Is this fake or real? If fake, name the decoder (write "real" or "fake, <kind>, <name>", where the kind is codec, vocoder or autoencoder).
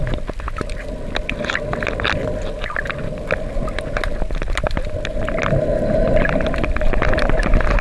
real